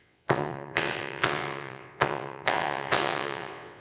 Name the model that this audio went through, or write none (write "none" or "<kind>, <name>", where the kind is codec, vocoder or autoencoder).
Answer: vocoder, WaveNeXt